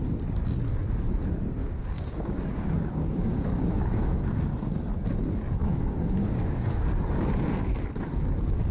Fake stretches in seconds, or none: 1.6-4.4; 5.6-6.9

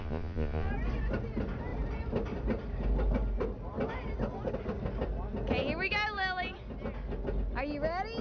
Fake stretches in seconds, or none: 0.0-0.7

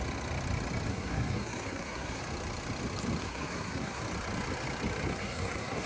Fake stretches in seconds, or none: 0.9-2.2; 3.2-4.0; 5.1-5.9

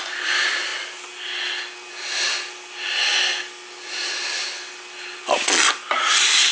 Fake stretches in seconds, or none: none

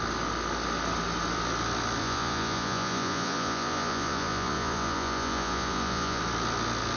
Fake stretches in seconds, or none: 2.0-6.2